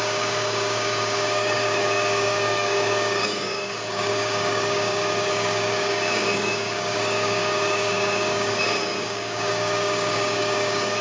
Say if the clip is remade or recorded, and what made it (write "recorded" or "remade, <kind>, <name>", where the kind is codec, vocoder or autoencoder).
remade, codec, DAC